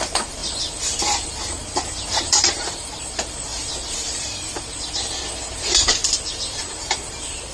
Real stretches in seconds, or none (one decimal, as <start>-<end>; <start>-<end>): 0.4-1.0

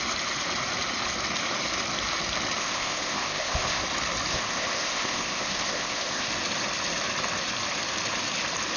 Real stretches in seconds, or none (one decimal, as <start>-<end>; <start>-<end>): 0.0-2.6; 3.8-4.3; 6.3-8.8